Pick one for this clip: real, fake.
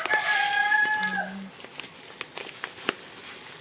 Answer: real